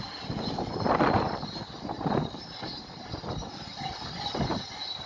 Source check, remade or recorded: recorded